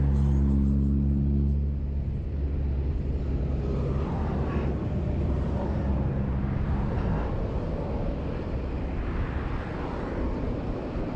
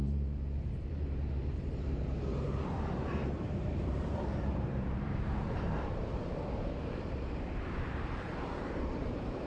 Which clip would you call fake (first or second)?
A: second